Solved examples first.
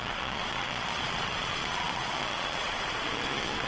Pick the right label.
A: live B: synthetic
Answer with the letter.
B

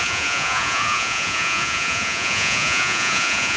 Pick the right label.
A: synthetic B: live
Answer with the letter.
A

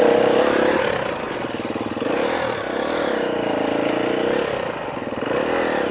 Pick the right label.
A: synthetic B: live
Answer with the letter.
B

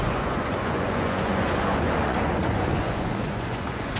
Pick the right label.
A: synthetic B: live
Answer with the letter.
A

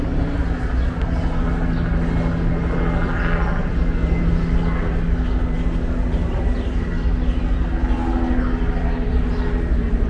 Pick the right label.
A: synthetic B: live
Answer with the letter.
B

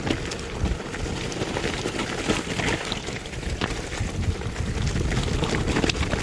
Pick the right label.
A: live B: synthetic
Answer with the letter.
A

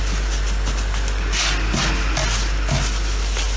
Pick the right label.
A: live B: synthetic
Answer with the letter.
A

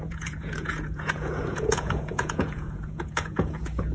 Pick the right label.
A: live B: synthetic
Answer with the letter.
B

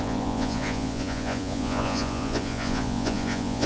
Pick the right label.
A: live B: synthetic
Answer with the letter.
B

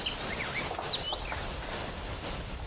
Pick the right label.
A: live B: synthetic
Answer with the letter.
A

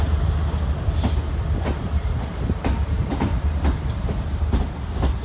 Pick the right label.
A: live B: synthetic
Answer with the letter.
A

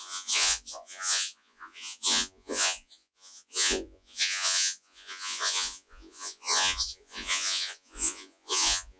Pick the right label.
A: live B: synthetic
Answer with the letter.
B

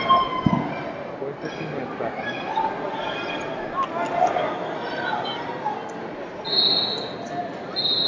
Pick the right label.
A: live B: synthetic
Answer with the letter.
A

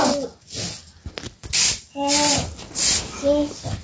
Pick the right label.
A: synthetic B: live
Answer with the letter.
B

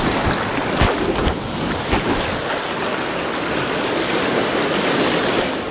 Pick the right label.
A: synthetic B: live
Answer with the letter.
B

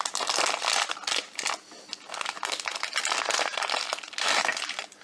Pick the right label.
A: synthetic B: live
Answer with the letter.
B